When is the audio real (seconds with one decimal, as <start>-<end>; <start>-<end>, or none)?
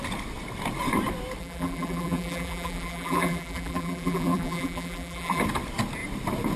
0.0-1.4; 5.4-6.6